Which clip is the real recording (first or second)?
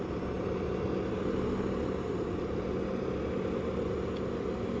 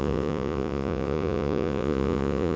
first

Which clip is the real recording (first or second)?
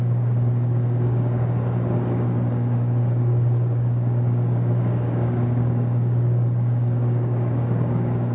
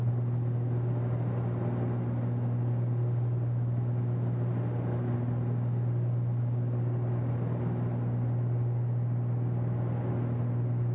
second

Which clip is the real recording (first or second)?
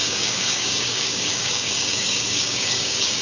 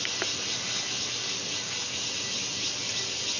second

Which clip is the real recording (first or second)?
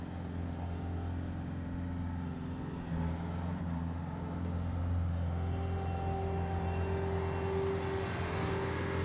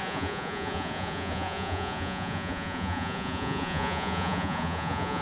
first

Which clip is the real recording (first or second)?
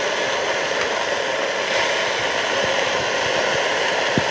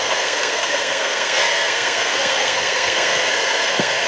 first